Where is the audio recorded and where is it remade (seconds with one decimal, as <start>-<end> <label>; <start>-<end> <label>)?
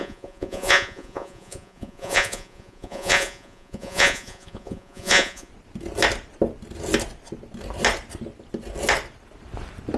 0.0-5.5 remade; 5.5-10.0 recorded